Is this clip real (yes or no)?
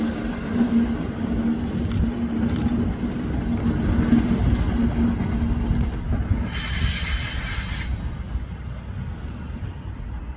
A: yes